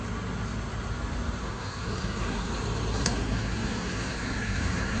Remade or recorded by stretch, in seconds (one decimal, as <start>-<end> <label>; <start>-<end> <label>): 0.0-1.4 recorded; 1.4-2.5 remade; 2.5-2.9 recorded; 2.9-5.0 remade

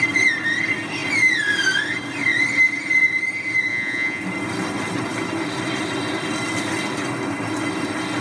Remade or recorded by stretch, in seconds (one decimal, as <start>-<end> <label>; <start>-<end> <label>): 0.0-3.7 recorded; 3.7-4.2 remade; 4.2-8.2 recorded

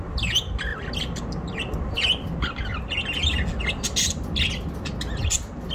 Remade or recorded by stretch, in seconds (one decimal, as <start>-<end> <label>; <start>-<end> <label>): 0.0-5.7 recorded

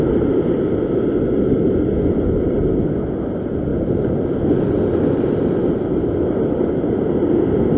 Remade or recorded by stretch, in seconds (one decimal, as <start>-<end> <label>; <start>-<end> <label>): 0.0-7.8 recorded